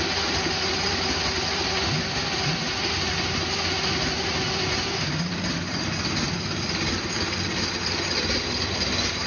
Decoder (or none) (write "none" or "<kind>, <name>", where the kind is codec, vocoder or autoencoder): none